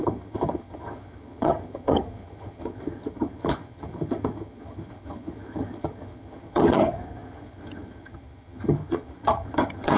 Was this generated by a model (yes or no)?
yes